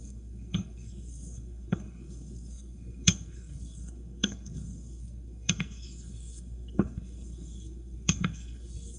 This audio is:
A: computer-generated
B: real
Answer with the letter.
A